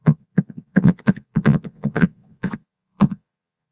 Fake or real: fake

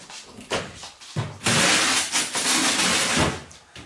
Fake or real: real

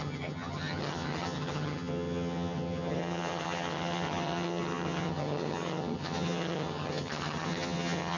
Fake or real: fake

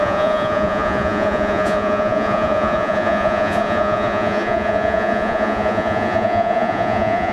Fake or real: fake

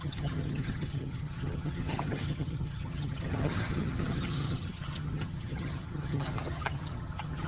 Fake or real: fake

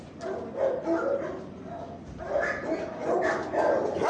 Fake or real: real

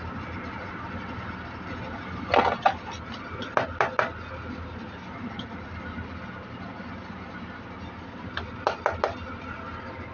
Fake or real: real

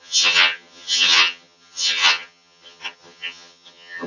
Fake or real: fake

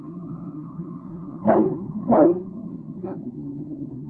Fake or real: fake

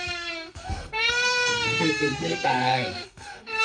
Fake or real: fake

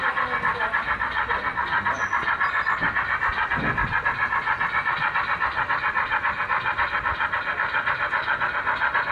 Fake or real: real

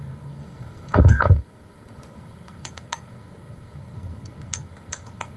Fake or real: fake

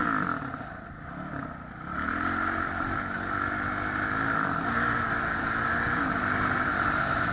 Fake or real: real